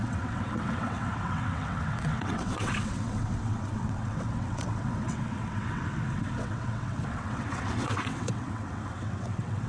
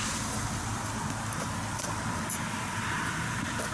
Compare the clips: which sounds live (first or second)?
second